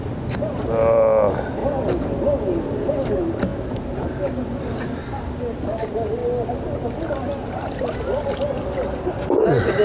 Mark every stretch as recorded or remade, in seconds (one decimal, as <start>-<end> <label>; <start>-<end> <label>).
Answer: 0.0-9.8 recorded